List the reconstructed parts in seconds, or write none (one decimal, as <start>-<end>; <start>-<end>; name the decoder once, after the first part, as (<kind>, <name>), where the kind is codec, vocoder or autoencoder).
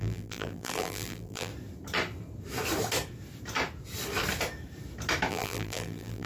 0.0-1.5 (vocoder, BigVGAN v2); 5.3-6.3